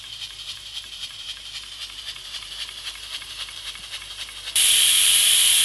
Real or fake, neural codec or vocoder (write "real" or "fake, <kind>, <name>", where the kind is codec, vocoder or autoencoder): fake, vocoder, BigVGAN v2